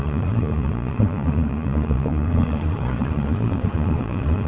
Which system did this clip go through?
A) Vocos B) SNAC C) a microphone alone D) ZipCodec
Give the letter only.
A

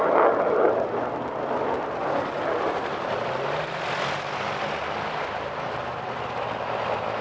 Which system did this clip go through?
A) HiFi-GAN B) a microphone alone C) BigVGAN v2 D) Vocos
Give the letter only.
B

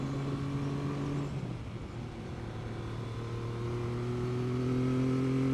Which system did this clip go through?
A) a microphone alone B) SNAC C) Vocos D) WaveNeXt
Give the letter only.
A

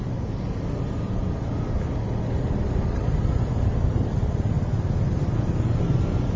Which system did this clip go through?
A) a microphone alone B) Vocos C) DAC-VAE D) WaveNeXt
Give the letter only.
A